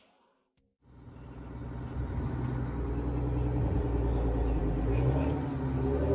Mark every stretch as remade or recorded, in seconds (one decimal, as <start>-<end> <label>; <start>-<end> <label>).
0.0-6.1 recorded